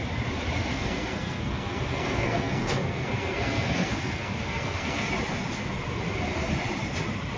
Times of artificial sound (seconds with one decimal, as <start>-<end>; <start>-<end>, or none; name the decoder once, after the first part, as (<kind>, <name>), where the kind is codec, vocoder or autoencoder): 0.7-5.1 (codec, SNAC)